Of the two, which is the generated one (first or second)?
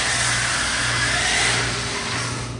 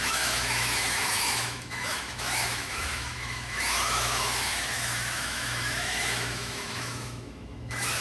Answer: second